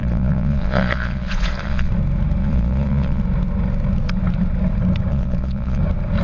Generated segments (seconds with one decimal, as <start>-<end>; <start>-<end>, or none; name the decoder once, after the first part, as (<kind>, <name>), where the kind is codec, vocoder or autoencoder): 0.0-1.9 (vocoder, Vocos); 2.4-3.2; 5.1-5.8